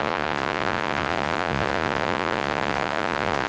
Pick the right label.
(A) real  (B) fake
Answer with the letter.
B